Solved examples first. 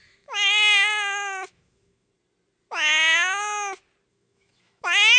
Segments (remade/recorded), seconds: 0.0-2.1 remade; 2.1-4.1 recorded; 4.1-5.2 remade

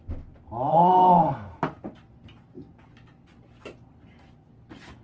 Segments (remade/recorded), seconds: 0.0-0.7 recorded; 0.7-1.6 remade; 1.6-5.0 recorded

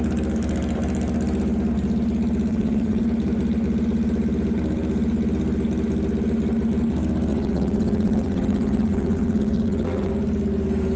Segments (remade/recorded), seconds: 0.0-2.5 recorded; 2.5-3.0 remade; 3.0-7.3 recorded; 7.3-10.1 remade; 10.1-11.0 recorded

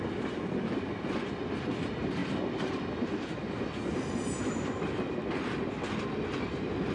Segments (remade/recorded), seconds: 0.0-6.9 recorded

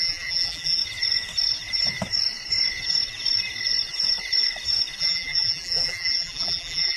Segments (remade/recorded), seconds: 0.0-0.8 remade; 0.8-5.0 recorded; 5.0-7.0 remade